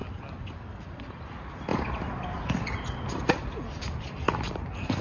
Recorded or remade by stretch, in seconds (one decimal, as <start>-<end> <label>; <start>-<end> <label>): 0.0-5.0 recorded